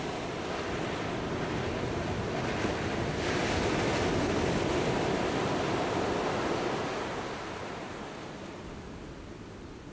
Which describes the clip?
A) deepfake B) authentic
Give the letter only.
B